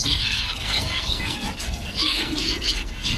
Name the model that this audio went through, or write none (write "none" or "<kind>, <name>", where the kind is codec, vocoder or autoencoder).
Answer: codec, SNAC